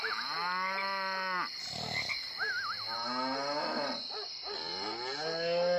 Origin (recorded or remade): recorded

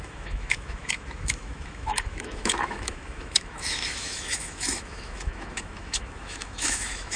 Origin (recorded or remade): remade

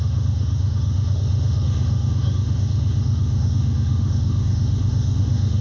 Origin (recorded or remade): remade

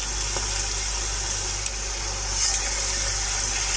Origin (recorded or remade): recorded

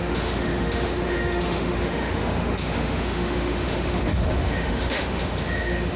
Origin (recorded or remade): remade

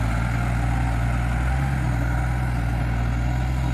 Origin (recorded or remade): recorded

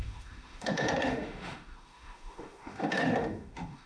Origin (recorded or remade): remade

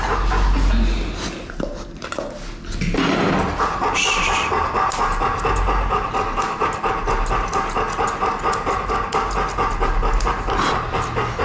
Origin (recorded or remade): recorded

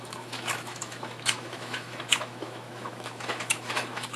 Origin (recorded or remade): remade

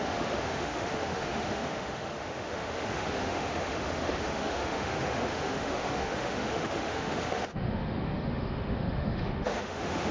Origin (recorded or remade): remade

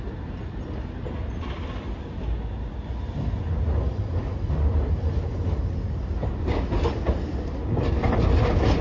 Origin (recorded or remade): recorded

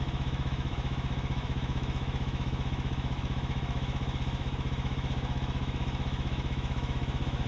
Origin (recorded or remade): remade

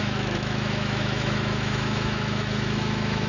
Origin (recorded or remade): remade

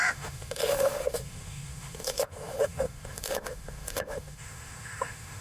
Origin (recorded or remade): remade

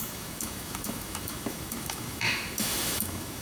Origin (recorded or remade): remade